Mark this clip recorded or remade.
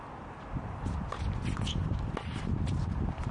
recorded